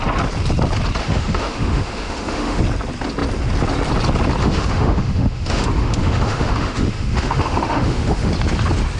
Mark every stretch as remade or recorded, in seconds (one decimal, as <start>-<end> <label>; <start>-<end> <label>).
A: 0.0-1.0 recorded; 1.0-2.6 remade; 2.6-4.4 recorded; 4.4-8.3 remade; 8.3-9.0 recorded